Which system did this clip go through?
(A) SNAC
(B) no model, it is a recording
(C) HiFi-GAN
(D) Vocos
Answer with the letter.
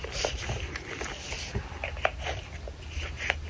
B